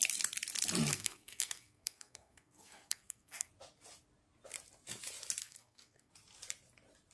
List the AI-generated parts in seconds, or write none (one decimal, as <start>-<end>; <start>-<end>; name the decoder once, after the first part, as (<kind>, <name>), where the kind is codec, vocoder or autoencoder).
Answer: 0.9-3.5 (codec, SNAC); 5.4-6.1

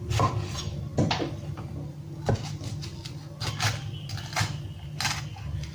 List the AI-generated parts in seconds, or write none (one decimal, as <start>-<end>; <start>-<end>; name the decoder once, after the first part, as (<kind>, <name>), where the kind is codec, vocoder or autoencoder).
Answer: none

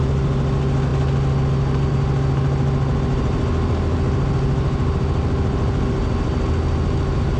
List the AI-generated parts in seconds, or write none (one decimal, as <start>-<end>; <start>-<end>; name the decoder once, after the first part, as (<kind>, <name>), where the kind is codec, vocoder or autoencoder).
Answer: none

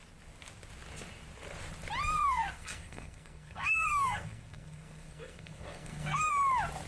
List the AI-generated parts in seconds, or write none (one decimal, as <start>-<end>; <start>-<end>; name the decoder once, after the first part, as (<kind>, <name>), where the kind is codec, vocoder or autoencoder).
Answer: 2.2-6.3 (codec, SNAC)

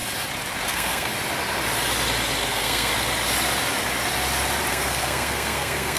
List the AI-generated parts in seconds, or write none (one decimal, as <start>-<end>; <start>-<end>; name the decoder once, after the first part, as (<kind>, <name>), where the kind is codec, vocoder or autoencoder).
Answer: 0.7-1.1 (codec, SNAC); 2.5-2.9; 4.7-6.0

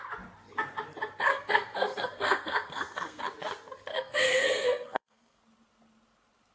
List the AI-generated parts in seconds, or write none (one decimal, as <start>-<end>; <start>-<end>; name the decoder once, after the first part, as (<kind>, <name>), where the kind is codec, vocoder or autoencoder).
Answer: 1.3-3.2 (codec, SNAC); 3.9-5.4

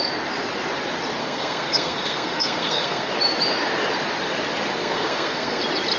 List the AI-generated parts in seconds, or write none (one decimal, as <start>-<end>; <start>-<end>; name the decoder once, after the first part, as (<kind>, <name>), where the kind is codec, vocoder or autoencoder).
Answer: 1.2-3.1 (codec, SNAC); 4.7-5.6

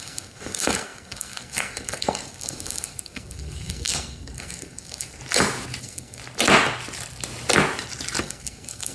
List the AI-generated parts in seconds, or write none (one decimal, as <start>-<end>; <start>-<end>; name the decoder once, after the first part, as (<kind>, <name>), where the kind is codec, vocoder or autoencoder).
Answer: 0.0-5.2 (codec, SNAC); 5.8-6.2; 8.2-8.9